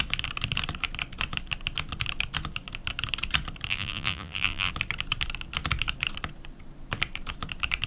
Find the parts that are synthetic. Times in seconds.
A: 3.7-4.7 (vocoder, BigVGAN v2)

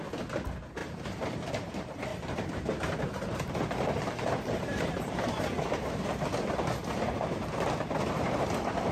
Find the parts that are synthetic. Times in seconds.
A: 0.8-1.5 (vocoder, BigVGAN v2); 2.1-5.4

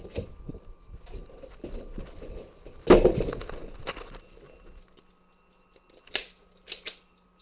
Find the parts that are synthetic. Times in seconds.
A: none